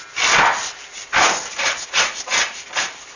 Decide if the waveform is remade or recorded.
recorded